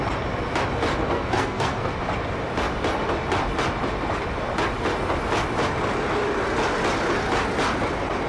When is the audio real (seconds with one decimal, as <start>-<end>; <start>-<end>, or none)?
0.0-0.9; 1.9-8.3